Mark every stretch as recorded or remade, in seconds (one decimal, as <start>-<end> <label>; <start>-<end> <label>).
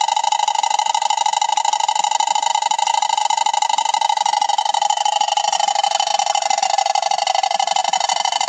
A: 0.0-4.5 recorded; 4.5-5.1 remade; 5.1-7.8 recorded; 7.8-8.5 remade